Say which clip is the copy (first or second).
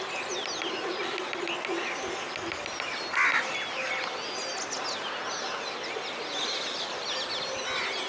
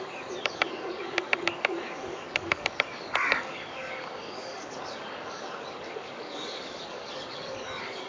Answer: second